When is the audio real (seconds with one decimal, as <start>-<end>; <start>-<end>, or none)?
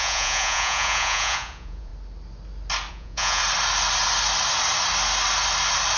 1.9-2.9; 3.4-6.0